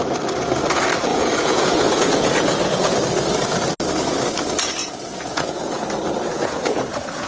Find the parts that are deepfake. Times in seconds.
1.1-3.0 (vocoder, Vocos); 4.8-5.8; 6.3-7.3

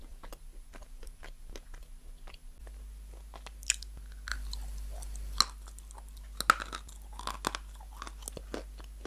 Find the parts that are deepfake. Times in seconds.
4.3-5.4 (vocoder, BigVGAN v2)

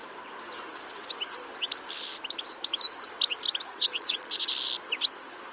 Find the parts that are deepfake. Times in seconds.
3.7-4.5 (vocoder, Vocos)

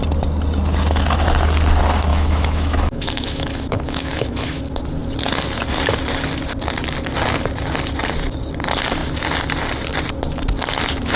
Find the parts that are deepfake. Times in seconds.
2.1-4.6 (autoencoder, DAC-VAE)